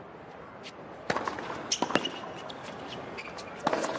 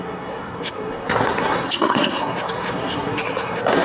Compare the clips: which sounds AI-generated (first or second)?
second